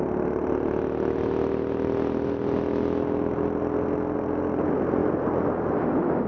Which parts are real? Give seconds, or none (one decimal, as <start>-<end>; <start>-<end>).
0.0-6.3